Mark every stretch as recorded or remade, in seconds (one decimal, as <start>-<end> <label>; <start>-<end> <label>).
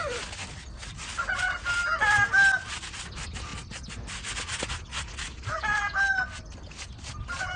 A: 0.0-7.6 recorded